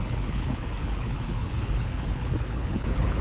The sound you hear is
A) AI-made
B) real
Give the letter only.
A